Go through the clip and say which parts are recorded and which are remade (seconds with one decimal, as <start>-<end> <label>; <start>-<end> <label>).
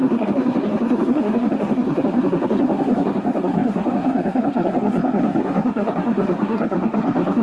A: 0.0-7.4 remade